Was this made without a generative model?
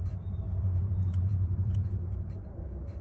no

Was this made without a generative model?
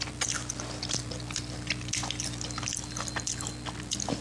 yes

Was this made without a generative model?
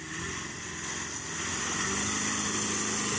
yes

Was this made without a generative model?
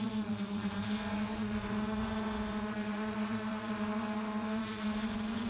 no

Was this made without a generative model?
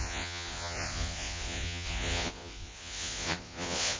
no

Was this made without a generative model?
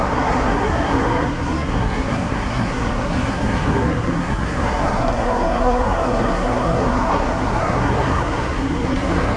no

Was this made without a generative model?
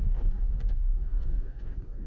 no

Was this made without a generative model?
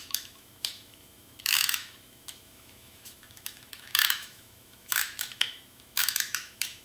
no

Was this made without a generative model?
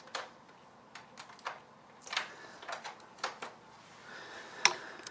yes